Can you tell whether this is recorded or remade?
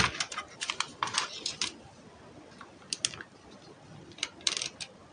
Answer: recorded